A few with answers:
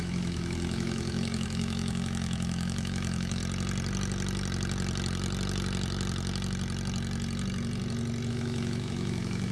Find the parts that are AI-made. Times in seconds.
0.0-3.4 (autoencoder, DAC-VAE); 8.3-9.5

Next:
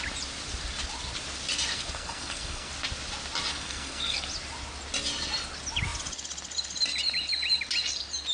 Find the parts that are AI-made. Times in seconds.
1.7-2.7 (codec, SNAC); 3.5-4.3

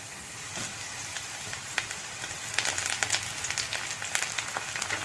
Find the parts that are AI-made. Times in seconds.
1.1-2.2 (vocoder, BigVGAN v2)

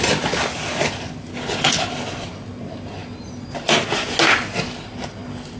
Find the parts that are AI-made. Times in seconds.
1.3-1.9 (codec, HILCodec)

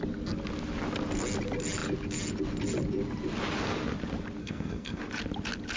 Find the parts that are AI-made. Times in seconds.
4.4-5.0 (codec, SNAC)

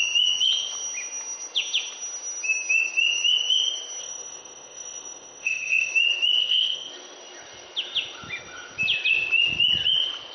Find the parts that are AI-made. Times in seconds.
4.0-5.9 (codec, ZipCodec); 6.4-6.9